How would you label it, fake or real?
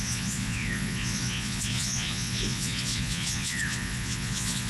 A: fake